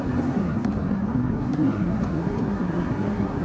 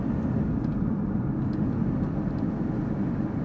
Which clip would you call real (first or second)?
second